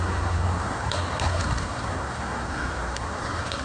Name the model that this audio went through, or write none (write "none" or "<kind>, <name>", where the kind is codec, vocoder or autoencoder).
codec, SNAC